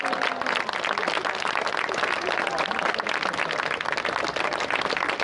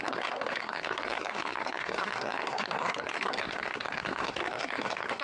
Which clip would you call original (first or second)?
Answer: first